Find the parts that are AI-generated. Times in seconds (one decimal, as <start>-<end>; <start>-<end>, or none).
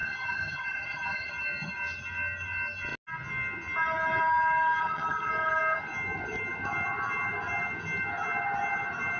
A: 0.0-1.3; 4.8-5.3